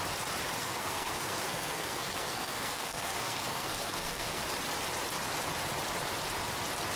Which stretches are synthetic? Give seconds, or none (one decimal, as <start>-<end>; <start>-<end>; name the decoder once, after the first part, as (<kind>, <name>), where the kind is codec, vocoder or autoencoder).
0.6-4.4 (codec, SNAC)